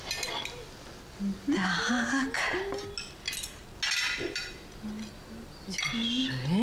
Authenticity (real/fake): real